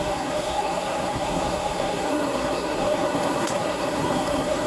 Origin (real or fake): fake